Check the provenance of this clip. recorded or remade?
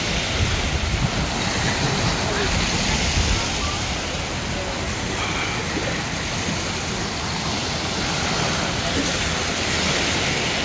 recorded